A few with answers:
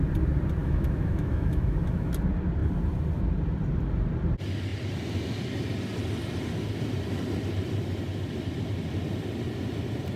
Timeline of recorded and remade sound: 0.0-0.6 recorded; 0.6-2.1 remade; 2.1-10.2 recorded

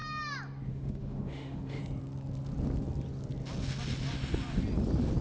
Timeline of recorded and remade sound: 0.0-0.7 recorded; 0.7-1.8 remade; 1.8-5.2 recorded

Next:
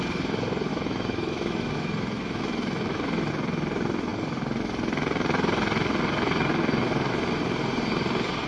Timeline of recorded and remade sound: 0.0-0.7 recorded; 0.7-3.3 remade; 3.3-8.5 recorded